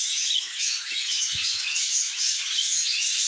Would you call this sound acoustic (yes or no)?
no